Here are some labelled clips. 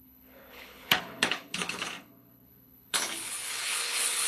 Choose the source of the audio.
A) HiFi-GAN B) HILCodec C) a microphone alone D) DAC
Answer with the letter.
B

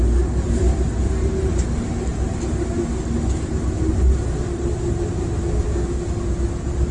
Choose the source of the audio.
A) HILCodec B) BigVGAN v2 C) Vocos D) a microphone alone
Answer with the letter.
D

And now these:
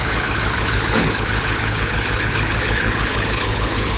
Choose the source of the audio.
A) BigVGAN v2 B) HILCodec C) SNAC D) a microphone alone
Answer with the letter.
B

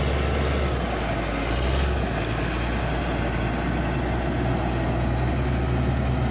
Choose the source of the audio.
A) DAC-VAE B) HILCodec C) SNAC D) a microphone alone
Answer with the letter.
D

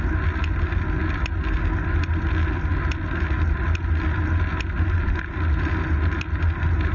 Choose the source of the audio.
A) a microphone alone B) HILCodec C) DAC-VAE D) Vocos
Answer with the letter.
A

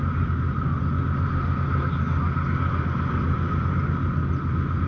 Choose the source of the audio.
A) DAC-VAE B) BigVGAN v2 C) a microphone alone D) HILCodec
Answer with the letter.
C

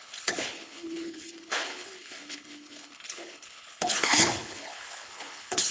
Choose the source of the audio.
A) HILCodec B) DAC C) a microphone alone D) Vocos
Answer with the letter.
A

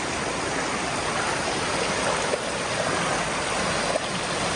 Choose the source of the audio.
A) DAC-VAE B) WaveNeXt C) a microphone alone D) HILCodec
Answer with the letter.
C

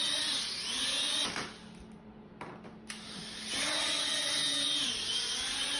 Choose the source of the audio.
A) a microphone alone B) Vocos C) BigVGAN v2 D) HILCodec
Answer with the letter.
A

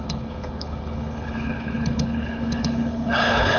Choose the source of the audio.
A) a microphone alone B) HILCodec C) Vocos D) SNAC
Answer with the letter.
B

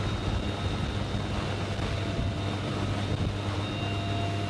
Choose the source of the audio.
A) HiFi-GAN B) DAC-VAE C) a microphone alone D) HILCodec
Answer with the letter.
C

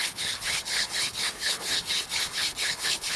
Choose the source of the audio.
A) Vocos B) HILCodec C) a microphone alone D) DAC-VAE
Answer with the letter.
B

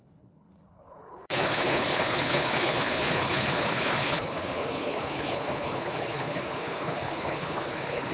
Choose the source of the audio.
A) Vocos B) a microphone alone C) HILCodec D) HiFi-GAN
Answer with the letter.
C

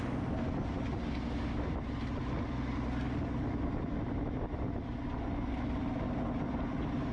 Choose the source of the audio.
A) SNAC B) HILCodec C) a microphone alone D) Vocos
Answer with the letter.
C